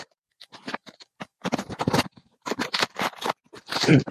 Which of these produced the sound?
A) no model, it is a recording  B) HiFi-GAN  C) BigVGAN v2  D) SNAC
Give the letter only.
A